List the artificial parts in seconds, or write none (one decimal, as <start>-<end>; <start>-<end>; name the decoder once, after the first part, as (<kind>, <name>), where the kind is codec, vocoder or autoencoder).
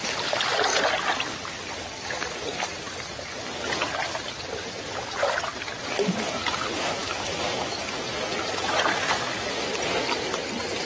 7.0-7.8 (autoencoder, DAC-VAE)